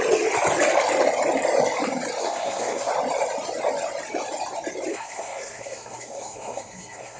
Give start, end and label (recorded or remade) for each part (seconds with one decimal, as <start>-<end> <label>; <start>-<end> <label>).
0.0-2.2 recorded; 2.2-2.9 remade; 2.9-4.9 recorded; 4.9-7.2 remade